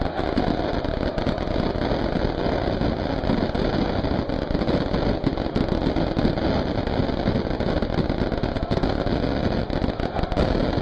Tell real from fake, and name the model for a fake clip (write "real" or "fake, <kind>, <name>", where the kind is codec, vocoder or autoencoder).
real